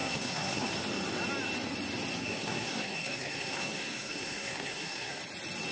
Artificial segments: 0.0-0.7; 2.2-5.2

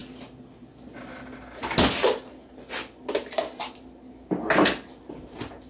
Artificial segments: none